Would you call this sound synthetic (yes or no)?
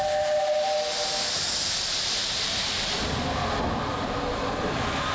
no